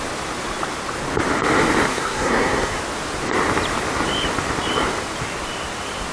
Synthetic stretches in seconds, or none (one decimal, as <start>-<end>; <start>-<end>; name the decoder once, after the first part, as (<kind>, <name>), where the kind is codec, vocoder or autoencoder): 1.9-2.8 (codec, SNAC)